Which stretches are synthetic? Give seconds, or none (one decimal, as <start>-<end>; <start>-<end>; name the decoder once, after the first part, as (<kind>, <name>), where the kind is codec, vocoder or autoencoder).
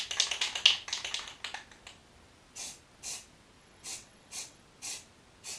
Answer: 3.6-4.6 (vocoder, WaveNeXt)